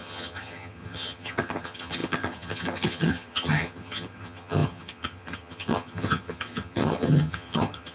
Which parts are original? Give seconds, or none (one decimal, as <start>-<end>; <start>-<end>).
none